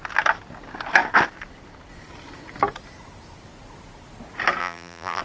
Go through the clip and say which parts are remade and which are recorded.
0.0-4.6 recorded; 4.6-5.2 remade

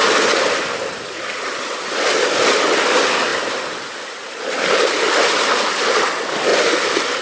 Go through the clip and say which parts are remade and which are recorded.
0.0-7.2 recorded

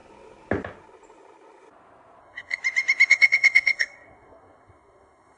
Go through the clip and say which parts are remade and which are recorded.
0.0-2.2 recorded; 2.2-2.6 remade; 2.6-3.1 recorded; 3.1-5.4 remade

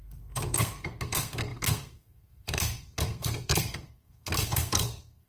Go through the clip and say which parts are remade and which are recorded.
0.0-5.3 remade